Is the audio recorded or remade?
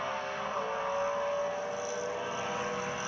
recorded